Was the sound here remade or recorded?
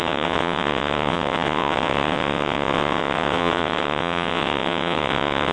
remade